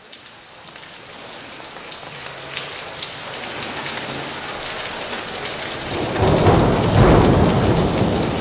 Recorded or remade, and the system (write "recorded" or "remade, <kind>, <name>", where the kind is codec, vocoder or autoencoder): recorded